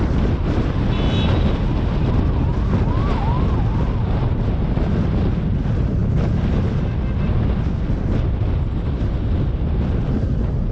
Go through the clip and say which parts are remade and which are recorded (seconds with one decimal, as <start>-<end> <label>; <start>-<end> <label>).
0.0-10.7 recorded